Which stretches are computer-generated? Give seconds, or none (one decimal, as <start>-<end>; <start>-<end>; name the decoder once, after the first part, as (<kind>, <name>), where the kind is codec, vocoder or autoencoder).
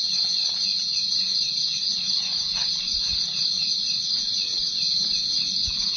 none